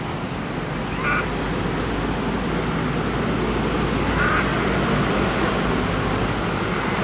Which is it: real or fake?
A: real